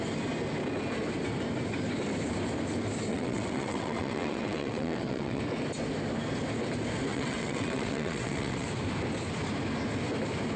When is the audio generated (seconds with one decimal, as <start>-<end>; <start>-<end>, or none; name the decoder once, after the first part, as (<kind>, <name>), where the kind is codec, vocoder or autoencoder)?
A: 3.1-5.4 (vocoder, WaveNeXt); 7.1-8.7